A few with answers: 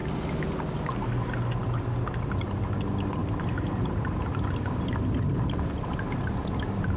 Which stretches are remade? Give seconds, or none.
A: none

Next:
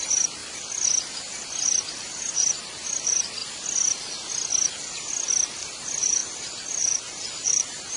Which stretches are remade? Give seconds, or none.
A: 0.0-0.4 (vocoder, BigVGAN v2); 2.2-3.4; 5.8-8.0